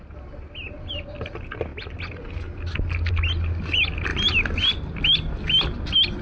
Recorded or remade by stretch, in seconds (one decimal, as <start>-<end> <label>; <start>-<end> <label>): 0.0-6.2 recorded